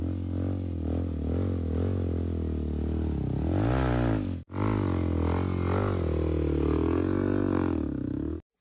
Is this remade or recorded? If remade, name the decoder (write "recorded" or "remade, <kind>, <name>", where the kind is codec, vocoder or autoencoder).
recorded